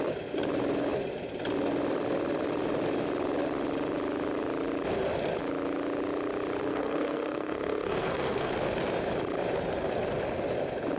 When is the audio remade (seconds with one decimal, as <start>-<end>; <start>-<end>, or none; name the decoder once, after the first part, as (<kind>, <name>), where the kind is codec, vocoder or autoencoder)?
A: 6.6-8.5 (codec, SNAC)